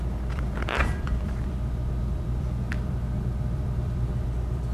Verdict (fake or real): fake